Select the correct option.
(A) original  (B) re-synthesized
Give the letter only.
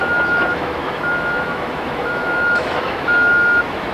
B